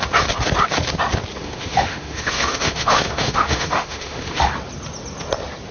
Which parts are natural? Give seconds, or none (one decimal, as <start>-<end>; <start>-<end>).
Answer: 0.0-1.4; 4.5-5.7